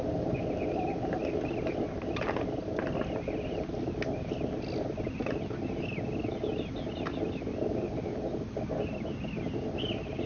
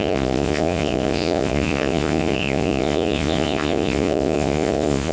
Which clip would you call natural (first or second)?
first